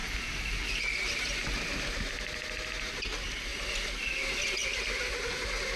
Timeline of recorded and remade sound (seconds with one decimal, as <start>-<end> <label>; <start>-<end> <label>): 0.0-5.8 recorded